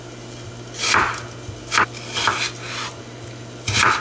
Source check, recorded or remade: recorded